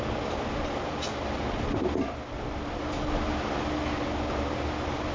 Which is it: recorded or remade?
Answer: recorded